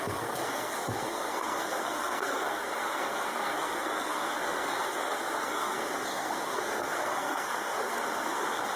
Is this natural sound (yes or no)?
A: no